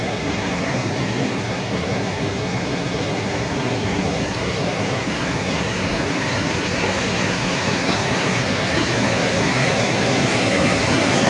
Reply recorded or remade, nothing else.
remade